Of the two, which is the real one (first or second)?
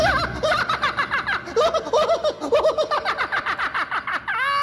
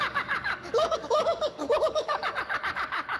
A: first